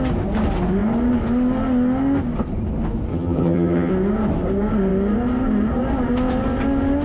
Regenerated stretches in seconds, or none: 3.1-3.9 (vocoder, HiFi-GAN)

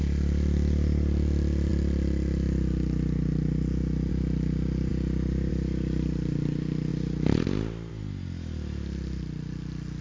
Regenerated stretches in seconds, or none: none

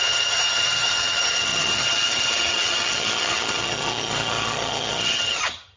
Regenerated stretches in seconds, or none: 0.0-5.8 (vocoder, HiFi-GAN)

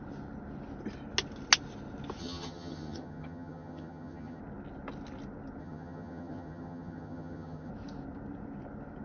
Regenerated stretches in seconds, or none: 2.2-4.4 (vocoder, HiFi-GAN); 5.6-7.7